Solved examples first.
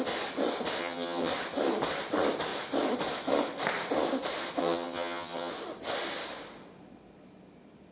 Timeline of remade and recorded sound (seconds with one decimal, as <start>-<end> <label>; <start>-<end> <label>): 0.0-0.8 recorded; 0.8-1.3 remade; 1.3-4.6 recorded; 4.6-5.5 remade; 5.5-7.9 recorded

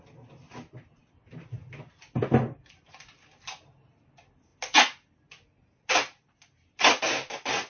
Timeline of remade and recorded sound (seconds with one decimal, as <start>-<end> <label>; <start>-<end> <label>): 0.0-7.7 recorded

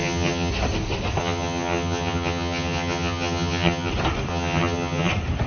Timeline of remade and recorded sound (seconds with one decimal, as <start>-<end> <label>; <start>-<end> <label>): 0.0-0.5 remade; 0.5-1.2 recorded; 1.2-3.9 remade; 3.9-4.3 recorded; 4.3-5.1 remade; 5.1-5.5 recorded

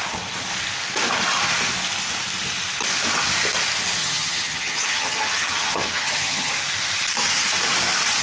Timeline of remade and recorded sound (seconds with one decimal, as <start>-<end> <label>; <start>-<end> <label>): 0.0-4.0 recorded; 4.0-6.5 remade; 6.5-8.2 recorded

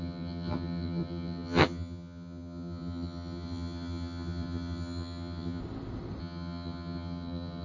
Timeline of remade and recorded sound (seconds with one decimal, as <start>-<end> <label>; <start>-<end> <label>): 0.0-5.6 remade; 5.6-6.2 recorded; 6.2-7.6 remade

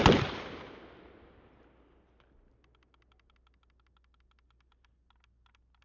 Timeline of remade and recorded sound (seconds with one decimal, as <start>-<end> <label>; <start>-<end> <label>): 0.0-5.8 recorded